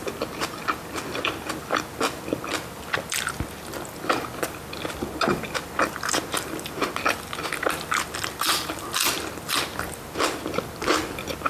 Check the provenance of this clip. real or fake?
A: real